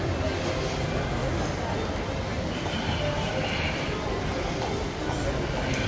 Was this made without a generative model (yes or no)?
yes